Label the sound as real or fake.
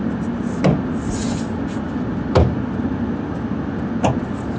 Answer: real